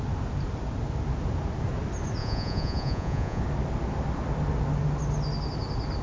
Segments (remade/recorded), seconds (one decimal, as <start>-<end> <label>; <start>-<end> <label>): 0.0-2.2 recorded; 2.2-3.4 remade; 3.4-6.0 recorded